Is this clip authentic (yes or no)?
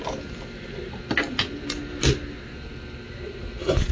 yes